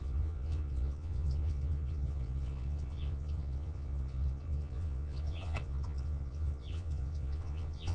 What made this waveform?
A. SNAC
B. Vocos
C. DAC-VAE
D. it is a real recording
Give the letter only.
B